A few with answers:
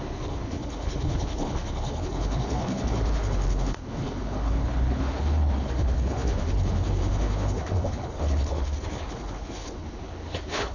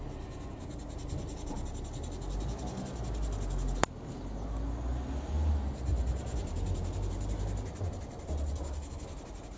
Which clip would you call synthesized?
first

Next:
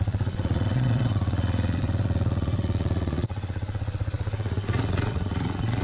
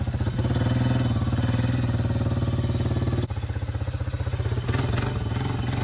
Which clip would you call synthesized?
first